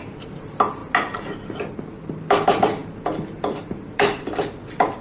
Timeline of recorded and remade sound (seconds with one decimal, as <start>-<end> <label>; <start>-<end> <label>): 0.0-2.8 recorded; 2.8-4.4 remade; 4.4-5.0 recorded